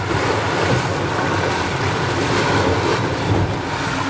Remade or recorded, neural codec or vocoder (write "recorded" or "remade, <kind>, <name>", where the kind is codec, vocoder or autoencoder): remade, vocoder, BigVGAN v2